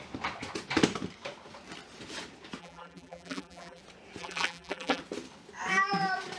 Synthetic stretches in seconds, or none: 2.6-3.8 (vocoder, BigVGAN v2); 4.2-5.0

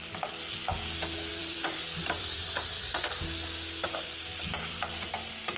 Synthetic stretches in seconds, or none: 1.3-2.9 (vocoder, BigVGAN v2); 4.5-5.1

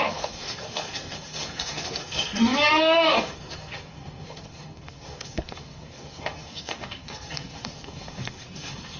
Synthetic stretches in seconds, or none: 0.0-9.0 (codec, SNAC)